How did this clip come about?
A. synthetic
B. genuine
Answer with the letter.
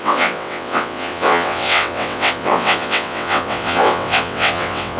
A